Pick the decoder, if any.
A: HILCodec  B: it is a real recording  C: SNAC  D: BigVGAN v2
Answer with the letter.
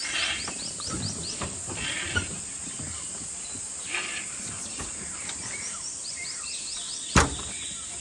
D